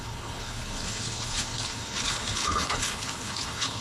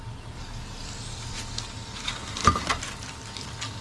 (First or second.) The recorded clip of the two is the second